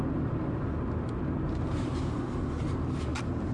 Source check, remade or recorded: recorded